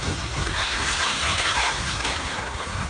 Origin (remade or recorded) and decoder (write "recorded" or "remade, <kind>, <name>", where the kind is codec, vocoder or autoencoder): remade, codec, SNAC